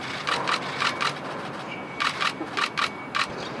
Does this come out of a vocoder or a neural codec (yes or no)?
no